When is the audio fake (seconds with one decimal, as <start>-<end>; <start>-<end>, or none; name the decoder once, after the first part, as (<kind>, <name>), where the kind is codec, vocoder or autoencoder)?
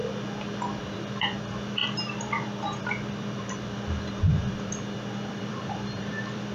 0.8-6.5 (vocoder, BigVGAN v2)